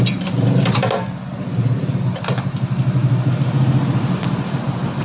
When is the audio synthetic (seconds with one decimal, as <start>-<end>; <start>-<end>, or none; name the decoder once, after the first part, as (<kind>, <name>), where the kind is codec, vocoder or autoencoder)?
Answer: none